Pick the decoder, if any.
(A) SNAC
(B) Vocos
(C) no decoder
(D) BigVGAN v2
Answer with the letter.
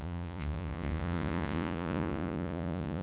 B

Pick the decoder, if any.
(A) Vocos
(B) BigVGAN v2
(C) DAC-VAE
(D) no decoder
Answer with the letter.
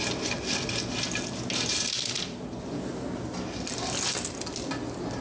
D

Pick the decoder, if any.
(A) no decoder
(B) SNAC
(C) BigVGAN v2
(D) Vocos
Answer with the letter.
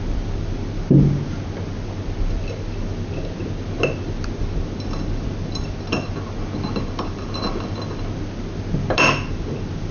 A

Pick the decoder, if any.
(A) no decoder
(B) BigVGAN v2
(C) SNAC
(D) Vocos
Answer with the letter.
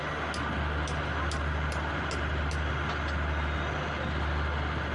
A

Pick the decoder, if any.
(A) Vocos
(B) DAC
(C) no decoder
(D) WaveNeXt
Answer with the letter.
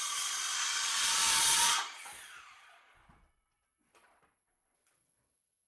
A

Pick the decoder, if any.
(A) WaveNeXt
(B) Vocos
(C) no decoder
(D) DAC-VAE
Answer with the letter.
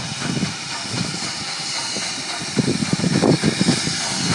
C